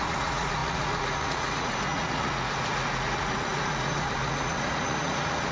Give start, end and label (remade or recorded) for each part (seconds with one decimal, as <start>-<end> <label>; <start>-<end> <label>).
0.0-5.5 remade